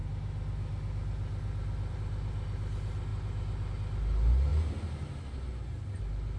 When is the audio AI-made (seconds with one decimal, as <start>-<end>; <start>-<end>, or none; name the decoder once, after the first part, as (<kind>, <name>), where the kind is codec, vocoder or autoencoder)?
none